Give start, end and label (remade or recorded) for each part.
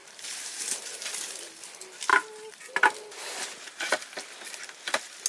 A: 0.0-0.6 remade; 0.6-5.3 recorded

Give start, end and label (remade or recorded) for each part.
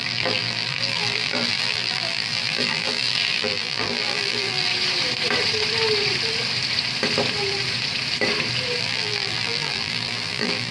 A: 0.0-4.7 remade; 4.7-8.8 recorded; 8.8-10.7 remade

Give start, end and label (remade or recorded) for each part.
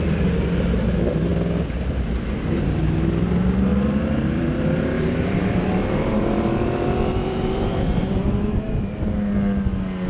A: 0.0-3.7 recorded; 3.7-8.7 remade; 8.7-10.1 recorded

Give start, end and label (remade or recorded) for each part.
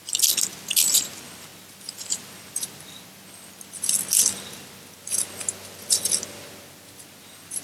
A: 0.0-7.6 recorded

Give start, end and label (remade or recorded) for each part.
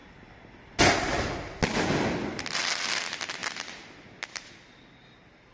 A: 0.0-5.5 recorded